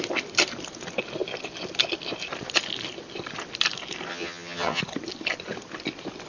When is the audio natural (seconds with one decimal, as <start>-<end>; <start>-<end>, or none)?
0.0-4.1; 4.8-6.3